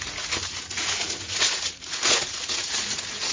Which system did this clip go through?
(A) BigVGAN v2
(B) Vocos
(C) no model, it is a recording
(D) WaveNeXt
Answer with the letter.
B